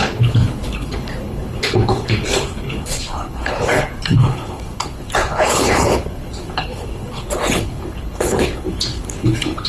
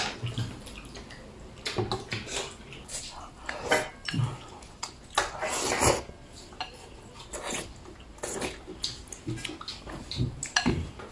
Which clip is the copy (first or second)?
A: first